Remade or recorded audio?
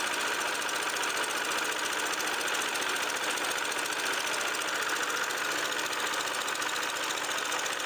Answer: recorded